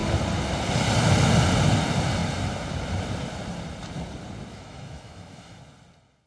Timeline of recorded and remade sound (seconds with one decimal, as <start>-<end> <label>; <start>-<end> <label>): 0.0-4.5 recorded; 4.5-5.6 remade; 5.6-6.3 recorded